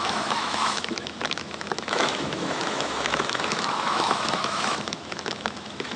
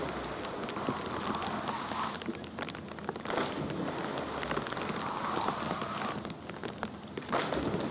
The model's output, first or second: first